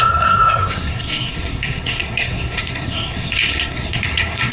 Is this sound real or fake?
fake